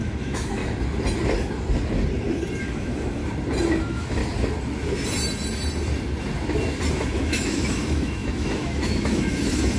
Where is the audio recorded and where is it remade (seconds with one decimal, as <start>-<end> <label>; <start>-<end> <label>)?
0.0-0.6 remade; 0.6-2.6 recorded; 2.6-3.2 remade; 3.2-3.7 recorded; 3.7-4.2 remade; 4.2-6.9 recorded; 6.9-9.8 remade